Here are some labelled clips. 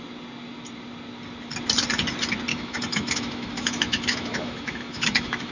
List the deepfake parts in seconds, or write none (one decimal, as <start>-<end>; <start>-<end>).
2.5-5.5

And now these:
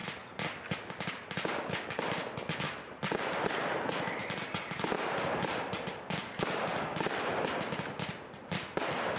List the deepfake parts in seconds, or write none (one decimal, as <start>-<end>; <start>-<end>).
none

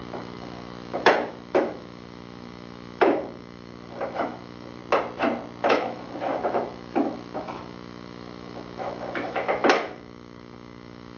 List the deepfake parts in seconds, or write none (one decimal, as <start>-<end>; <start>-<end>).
0.0-4.8; 5.6-11.2